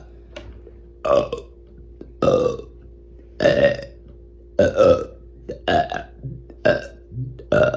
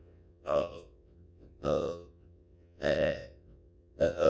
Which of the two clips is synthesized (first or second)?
second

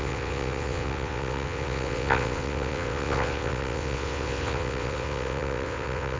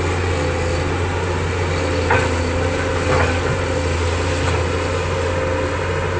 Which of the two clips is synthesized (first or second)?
first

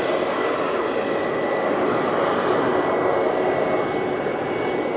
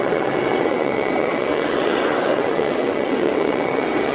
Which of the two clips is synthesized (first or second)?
second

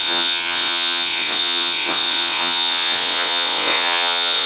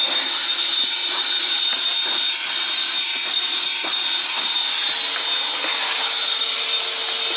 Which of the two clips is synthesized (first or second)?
first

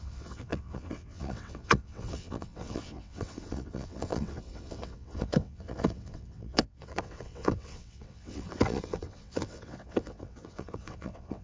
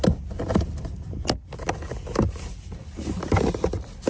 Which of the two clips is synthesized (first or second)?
first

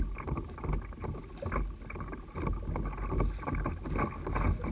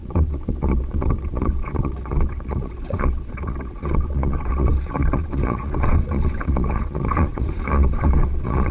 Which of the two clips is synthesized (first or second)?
second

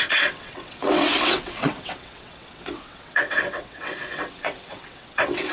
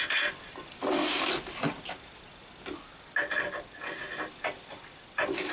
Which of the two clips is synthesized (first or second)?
first